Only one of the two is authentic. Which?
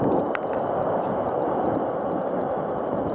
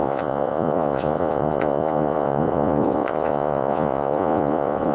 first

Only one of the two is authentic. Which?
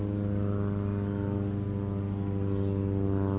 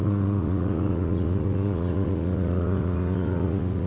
first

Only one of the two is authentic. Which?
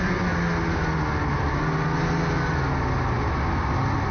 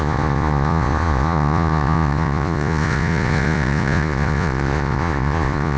first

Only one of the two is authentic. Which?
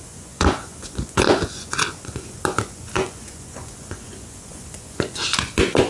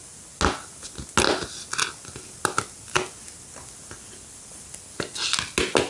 second